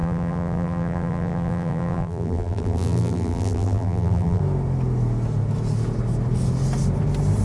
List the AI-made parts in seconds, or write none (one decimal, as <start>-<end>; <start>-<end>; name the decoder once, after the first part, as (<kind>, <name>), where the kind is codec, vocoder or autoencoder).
0.0-4.4 (vocoder, BigVGAN v2)